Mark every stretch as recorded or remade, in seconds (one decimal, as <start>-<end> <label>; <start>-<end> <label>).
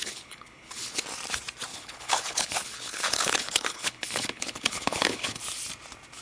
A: 0.0-1.0 remade; 1.0-1.7 recorded; 1.7-5.4 remade; 5.4-6.2 recorded